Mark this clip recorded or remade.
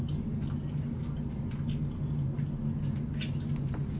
recorded